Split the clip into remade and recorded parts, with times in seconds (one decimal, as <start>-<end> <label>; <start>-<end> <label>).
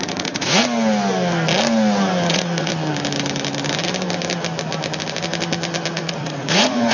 0.0-0.6 remade; 0.6-2.3 recorded; 2.3-2.7 remade; 2.7-5.9 recorded; 5.9-6.9 remade